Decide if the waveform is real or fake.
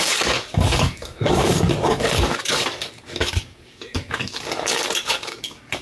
fake